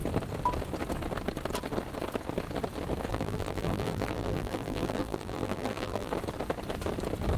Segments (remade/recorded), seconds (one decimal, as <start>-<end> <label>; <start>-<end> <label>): 0.0-3.1 recorded; 3.1-6.1 remade; 6.1-7.4 recorded